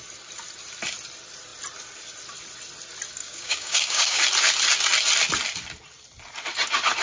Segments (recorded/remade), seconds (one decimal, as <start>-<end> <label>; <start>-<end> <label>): 0.0-3.2 recorded; 3.2-4.2 remade; 4.2-7.0 recorded